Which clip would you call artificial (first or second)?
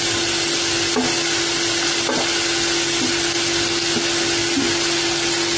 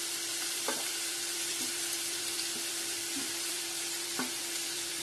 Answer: second